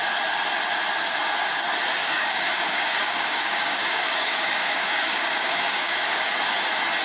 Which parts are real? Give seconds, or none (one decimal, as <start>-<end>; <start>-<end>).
0.0-2.0; 6.2-7.0